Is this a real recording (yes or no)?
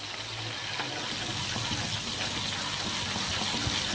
yes